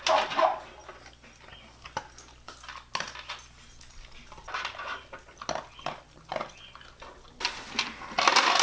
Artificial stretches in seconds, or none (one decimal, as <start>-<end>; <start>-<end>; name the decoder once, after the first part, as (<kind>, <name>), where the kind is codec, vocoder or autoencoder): none